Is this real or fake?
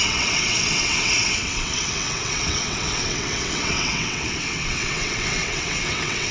fake